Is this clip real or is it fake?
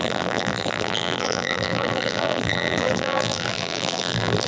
fake